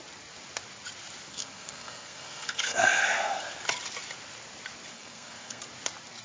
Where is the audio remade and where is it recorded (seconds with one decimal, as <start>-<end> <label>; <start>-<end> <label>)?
0.0-1.3 recorded; 1.3-3.4 remade; 3.4-4.9 recorded; 4.9-5.6 remade; 5.6-6.2 recorded